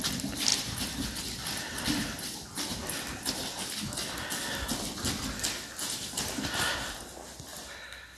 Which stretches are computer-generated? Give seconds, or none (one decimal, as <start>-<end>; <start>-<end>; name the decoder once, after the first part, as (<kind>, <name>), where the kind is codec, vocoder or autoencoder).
none